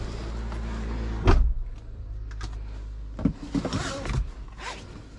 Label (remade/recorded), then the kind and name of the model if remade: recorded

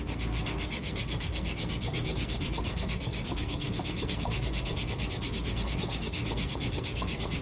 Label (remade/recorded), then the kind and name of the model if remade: remade, codec, SNAC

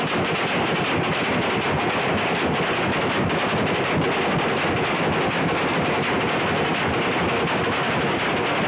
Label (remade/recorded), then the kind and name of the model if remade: recorded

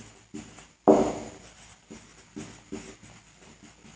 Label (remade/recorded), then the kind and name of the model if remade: recorded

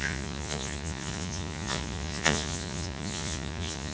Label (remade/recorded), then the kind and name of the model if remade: remade, vocoder, Vocos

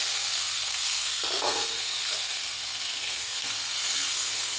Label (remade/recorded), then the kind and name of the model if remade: remade, codec, SNAC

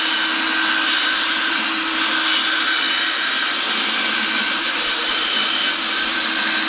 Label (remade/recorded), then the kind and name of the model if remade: recorded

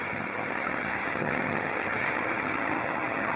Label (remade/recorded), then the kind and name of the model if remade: remade, vocoder, HiFi-GAN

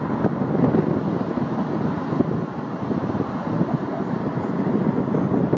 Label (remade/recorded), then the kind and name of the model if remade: recorded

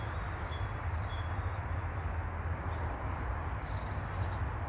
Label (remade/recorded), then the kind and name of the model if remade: recorded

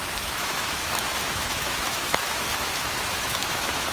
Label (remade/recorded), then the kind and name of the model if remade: remade, autoencoder, DAC-VAE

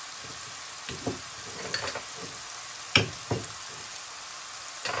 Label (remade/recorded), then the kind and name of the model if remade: recorded